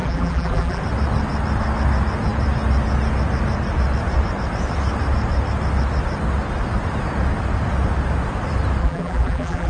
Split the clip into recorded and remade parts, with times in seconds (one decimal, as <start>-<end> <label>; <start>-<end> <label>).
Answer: 0.0-0.8 remade; 0.8-8.8 recorded; 8.8-9.7 remade